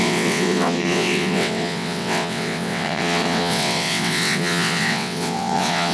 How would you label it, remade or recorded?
remade